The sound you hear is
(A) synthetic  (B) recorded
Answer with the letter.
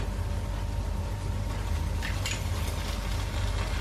B